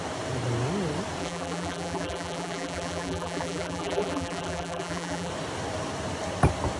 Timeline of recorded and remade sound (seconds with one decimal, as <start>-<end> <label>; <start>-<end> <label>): 0.0-1.2 recorded; 1.2-5.3 remade; 5.3-6.8 recorded